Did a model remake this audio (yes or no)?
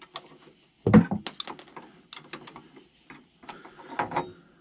no